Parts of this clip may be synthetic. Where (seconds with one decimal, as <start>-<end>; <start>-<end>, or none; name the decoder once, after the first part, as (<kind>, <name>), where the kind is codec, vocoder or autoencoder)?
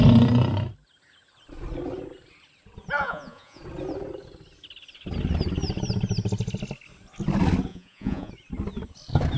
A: 3.0-3.6 (vocoder, Vocos); 7.7-8.3